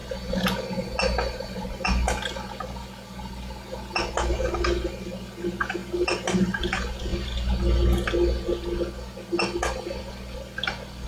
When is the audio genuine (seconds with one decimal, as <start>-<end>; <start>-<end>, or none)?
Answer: 0.0-5.8; 6.6-11.1